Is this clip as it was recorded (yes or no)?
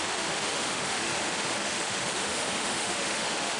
no